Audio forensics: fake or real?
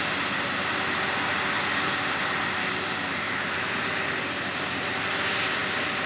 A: real